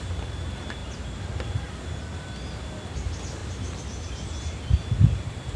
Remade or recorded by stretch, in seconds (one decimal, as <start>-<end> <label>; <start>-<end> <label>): 0.0-0.8 recorded; 0.8-2.0 remade; 2.0-3.4 recorded; 3.4-4.4 remade; 4.4-5.6 recorded